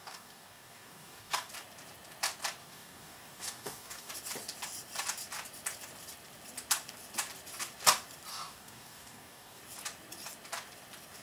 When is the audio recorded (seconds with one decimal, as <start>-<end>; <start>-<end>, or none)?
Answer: 1.5-2.6; 4.1-8.3; 9.6-11.2